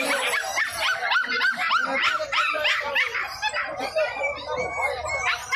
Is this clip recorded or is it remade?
recorded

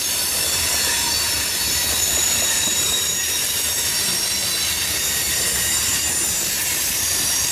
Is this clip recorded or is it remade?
remade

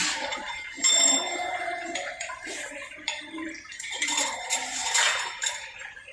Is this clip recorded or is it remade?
remade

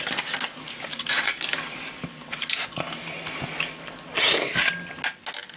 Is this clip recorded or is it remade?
recorded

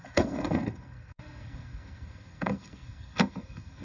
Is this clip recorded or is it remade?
remade